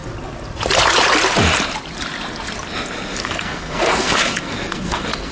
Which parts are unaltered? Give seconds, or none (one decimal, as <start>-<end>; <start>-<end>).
0.0-3.2

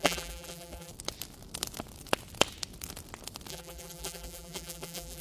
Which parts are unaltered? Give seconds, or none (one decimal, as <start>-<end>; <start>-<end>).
0.9-3.5

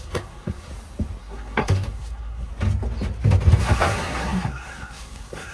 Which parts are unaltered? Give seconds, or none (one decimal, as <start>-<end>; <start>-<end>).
0.7-1.2; 2.5-3.6

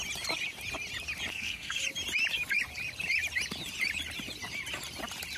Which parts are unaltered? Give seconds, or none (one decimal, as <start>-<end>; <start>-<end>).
0.0-1.3; 1.8-5.4

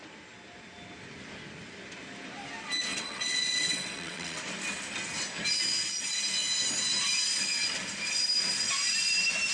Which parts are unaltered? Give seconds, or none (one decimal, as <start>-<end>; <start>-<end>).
0.0-2.9; 4.4-9.5

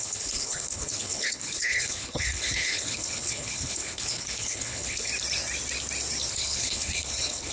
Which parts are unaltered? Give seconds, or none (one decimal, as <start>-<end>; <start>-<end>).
5.1-6.3

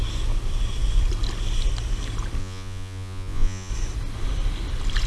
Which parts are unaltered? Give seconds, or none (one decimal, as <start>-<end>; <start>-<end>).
0.0-2.4; 3.7-5.1

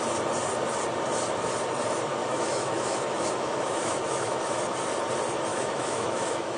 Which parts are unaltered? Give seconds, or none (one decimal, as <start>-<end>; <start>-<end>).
0.0-2.2; 4.6-5.5